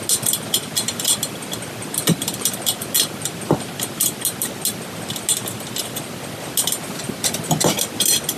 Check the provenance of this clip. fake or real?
real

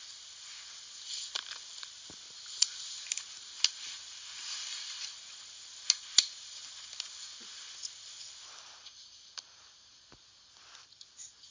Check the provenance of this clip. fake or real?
real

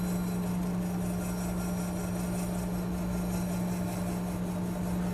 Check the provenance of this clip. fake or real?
real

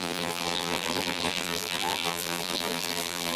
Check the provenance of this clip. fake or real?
fake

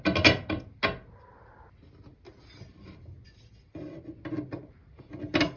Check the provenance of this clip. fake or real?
real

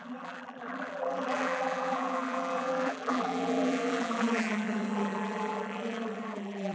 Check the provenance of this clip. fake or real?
fake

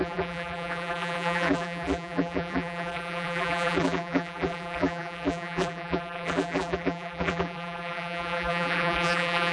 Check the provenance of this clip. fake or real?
fake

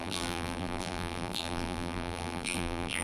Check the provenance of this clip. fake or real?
fake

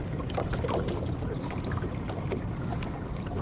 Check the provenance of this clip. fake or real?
fake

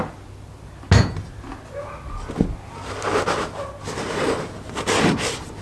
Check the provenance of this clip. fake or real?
real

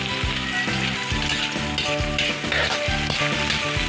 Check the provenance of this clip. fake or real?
real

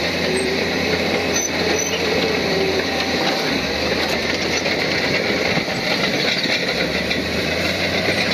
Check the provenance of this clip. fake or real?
fake